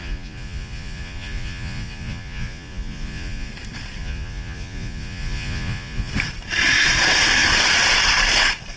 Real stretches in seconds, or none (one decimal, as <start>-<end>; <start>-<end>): 3.5-4.0; 6.1-8.8